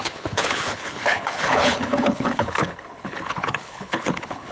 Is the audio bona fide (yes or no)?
no